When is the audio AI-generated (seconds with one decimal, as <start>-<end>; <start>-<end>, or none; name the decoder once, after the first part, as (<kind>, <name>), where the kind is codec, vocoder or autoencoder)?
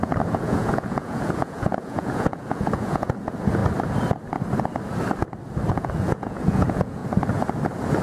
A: 0.0-3.6 (vocoder, Vocos); 5.7-7.0